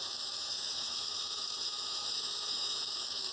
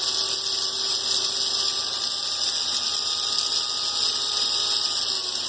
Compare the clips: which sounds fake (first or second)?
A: first